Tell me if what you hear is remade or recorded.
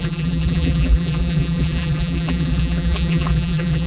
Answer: remade